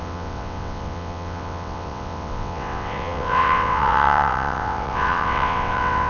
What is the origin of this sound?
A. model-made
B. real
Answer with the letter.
A